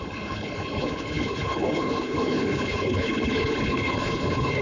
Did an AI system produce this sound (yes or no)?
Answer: yes